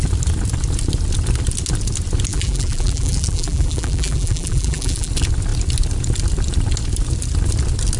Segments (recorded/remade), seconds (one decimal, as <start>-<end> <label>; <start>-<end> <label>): 0.0-2.3 recorded; 2.3-5.1 remade; 5.1-8.0 recorded